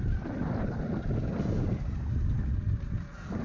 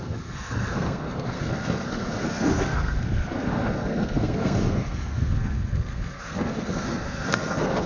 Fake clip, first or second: second